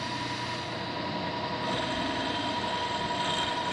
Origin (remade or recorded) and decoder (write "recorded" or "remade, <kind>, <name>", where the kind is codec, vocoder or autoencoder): recorded